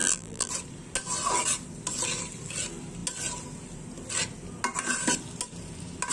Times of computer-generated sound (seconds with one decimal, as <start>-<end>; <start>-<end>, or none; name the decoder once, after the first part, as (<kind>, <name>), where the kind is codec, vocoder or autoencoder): 0.0-0.5 (vocoder, BigVGAN v2)